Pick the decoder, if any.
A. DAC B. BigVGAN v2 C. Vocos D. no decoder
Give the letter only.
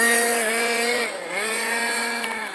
C